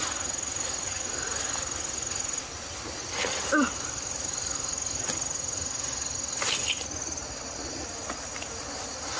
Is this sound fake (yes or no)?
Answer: no